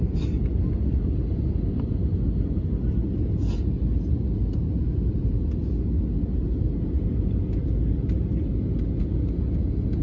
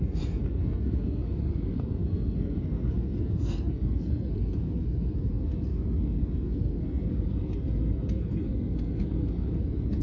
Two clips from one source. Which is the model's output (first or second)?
second